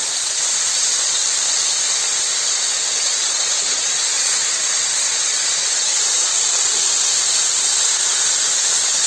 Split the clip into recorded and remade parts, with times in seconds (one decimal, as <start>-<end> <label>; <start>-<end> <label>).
0.0-1.2 remade; 1.2-2.9 recorded; 2.9-6.3 remade; 6.3-8.7 recorded; 8.7-9.1 remade